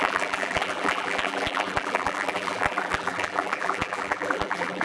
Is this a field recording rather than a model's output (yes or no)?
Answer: no